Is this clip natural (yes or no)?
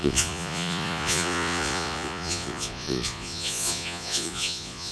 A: no